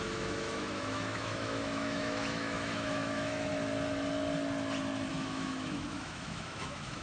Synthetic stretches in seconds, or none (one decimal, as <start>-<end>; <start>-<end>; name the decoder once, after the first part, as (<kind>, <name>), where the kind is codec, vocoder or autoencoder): 0.0-3.5 (autoencoder, DAC-VAE); 5.1-7.0